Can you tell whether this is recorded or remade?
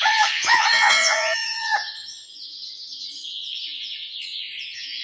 remade